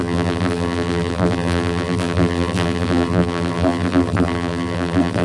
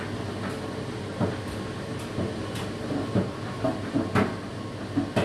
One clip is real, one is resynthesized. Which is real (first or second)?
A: second